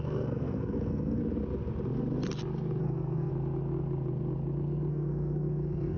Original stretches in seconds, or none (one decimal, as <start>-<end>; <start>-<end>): 1.2-2.8; 3.3-4.9